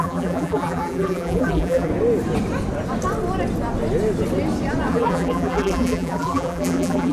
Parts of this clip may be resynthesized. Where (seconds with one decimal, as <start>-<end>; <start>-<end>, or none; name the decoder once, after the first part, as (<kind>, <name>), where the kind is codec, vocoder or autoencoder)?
0.0-1.9 (vocoder, BigVGAN v2); 4.9-7.1